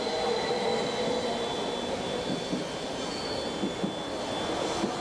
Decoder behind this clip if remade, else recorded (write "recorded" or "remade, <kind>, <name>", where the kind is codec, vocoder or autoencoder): recorded